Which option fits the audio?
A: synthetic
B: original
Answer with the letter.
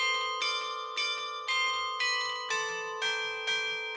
B